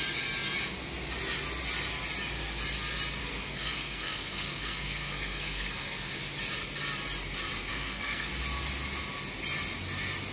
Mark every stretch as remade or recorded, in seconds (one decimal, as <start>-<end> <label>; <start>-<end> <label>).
0.0-3.2 recorded; 3.2-6.1 remade; 6.1-7.7 recorded; 7.7-8.3 remade; 8.3-10.3 recorded